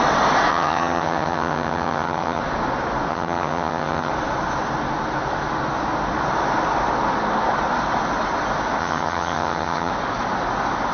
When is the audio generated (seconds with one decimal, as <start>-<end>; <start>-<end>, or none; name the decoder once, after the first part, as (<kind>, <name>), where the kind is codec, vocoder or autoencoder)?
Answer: 0.5-2.4 (vocoder, HiFi-GAN); 3.1-4.1; 8.8-9.9